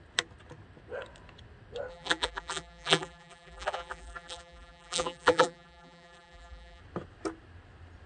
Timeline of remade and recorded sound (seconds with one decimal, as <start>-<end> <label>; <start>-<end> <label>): 0.0-1.9 recorded; 1.9-6.8 remade; 6.8-8.1 recorded